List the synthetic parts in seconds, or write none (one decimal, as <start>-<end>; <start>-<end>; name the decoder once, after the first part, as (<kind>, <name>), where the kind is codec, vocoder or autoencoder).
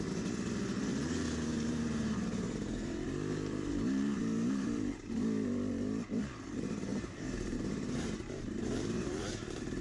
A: 0.9-5.1 (vocoder, BigVGAN v2); 6.9-9.3